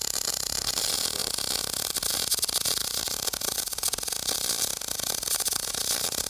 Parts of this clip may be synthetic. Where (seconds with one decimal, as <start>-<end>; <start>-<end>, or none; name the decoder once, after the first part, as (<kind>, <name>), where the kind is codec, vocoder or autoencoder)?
2.8-6.3 (vocoder, BigVGAN v2)